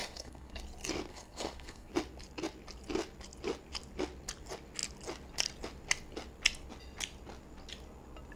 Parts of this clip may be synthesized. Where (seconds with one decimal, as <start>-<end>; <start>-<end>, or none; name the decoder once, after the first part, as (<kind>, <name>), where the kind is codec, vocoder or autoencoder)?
0.0-0.6 (codec, SNAC); 1.1-1.9